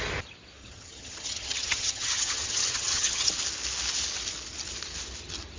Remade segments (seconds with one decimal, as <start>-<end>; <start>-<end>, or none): 0.6-3.3